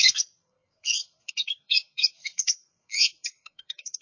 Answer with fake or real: fake